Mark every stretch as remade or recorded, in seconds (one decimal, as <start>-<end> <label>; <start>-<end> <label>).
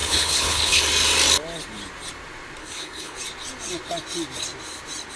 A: 0.0-0.8 remade; 0.8-2.6 recorded; 2.6-3.2 remade; 3.2-5.2 recorded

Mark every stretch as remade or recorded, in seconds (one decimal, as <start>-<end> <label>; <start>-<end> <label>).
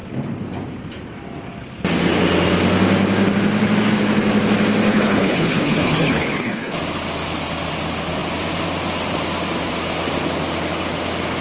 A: 0.0-4.9 recorded; 4.9-6.8 remade; 6.8-11.4 recorded